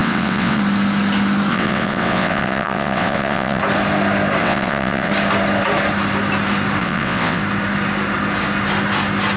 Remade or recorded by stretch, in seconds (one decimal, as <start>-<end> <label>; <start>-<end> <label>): 0.0-0.6 remade; 0.6-1.5 recorded; 1.5-3.6 remade; 3.6-4.4 recorded; 4.4-5.1 remade; 5.1-6.8 recorded; 6.8-7.4 remade; 7.4-9.4 recorded

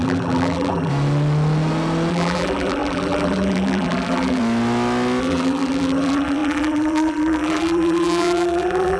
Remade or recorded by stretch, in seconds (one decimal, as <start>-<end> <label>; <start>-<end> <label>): 0.0-0.9 remade; 0.9-2.1 recorded; 2.1-4.4 remade; 4.4-5.2 recorded; 5.2-9.0 remade